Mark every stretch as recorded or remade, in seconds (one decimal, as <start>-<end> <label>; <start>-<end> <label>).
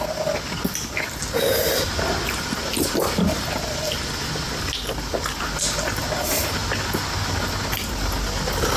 0.0-8.8 recorded